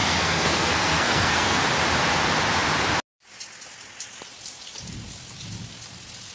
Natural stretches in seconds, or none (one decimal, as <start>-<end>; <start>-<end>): 1.6-6.3